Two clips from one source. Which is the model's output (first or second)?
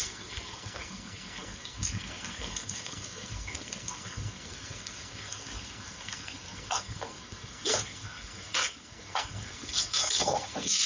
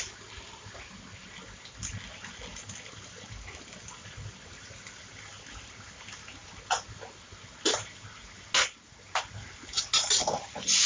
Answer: first